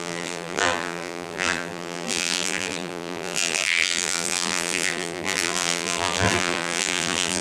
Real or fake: fake